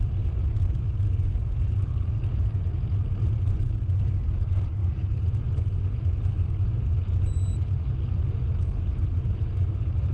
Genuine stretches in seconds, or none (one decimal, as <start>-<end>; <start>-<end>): 0.0-10.1